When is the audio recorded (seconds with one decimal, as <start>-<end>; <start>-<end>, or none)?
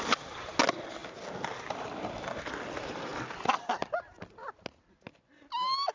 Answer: 0.0-5.9